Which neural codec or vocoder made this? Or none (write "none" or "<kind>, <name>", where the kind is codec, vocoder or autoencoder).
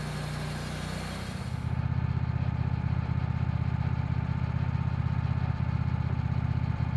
none